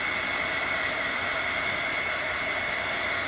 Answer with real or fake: real